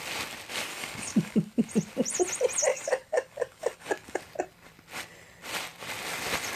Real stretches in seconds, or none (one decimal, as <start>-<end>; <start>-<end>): 0.0-0.7; 1.7-2.7; 4.2-6.6